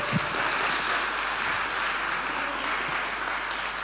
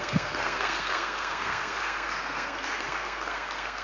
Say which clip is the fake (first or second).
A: second